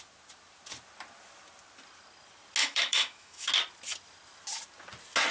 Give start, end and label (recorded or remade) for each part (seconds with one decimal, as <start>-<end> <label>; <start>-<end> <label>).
0.0-2.6 recorded; 2.6-3.5 remade; 3.5-5.3 recorded